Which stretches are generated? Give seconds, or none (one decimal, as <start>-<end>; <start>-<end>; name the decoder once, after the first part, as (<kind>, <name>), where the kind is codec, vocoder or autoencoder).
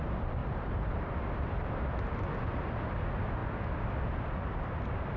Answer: 0.4-1.8 (vocoder, BigVGAN v2)